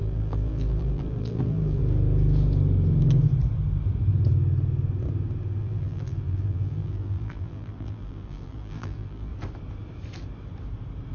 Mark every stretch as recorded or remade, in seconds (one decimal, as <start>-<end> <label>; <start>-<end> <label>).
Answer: 0.0-1.8 remade; 1.8-5.6 recorded; 5.6-9.3 remade; 9.3-11.1 recorded